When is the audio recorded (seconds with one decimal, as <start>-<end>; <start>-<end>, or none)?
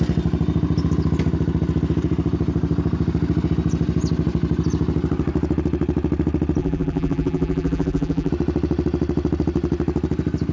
0.0-6.6; 8.3-10.5